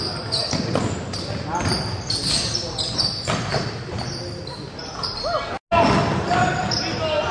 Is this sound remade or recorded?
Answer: recorded